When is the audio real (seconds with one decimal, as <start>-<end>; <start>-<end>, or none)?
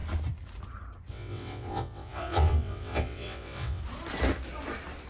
0.0-1.1; 3.8-5.1